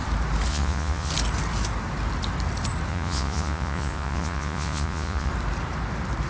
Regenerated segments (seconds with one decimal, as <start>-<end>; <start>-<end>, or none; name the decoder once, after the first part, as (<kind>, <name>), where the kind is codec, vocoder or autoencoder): 0.5-1.1 (vocoder, Vocos); 2.9-5.3